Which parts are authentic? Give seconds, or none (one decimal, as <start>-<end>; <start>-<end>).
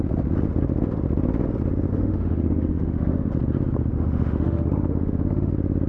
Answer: 0.0-1.9; 3.3-3.9; 5.5-5.9